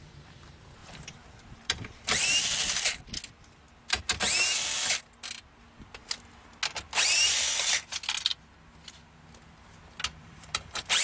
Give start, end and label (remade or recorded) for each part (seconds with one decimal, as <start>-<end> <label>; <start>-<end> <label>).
0.0-0.8 recorded; 0.8-2.4 remade; 2.4-10.2 recorded; 10.2-11.0 remade